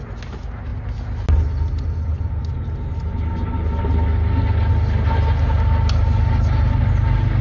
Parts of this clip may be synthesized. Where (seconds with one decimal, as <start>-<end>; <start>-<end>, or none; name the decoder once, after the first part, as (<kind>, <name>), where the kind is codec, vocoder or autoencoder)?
none